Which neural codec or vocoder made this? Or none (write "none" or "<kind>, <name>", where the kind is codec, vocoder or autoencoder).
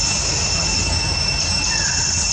none